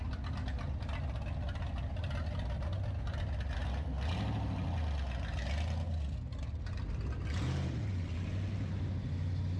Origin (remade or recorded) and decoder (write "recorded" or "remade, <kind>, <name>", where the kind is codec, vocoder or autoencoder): recorded